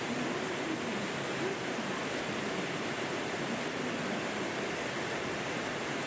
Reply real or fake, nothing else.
real